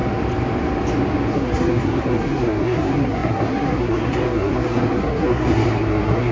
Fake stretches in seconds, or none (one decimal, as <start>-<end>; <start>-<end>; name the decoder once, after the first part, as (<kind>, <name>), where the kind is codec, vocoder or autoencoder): 1.3-6.3 (codec, SNAC)